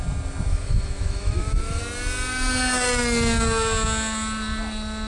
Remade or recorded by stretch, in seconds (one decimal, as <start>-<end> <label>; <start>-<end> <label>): 0.0-0.5 recorded; 0.5-1.8 remade; 1.8-5.1 recorded